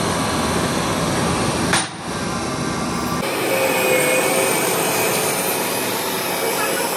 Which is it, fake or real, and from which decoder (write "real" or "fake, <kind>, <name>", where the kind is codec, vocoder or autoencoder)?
real